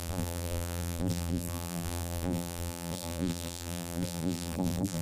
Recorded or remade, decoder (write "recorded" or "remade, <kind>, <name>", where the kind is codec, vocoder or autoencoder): remade, vocoder, BigVGAN v2